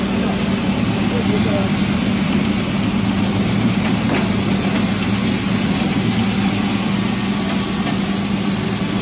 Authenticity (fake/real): real